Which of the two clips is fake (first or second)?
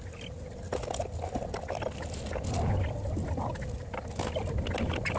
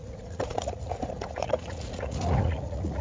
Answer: second